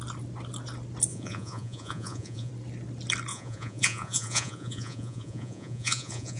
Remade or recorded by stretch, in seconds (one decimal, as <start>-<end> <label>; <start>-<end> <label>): 0.0-1.1 recorded; 1.1-2.5 remade; 2.5-3.3 recorded; 3.3-6.4 remade